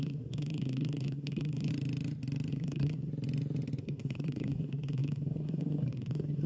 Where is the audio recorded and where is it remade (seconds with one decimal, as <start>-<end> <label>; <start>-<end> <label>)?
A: 0.0-1.7 remade; 1.7-2.5 recorded; 2.5-3.1 remade; 3.1-3.8 recorded; 3.8-6.5 remade